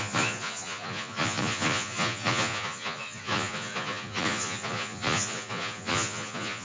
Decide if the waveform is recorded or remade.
remade